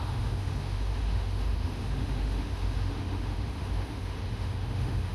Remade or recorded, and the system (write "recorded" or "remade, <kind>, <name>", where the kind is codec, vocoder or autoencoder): remade, autoencoder, DAC-VAE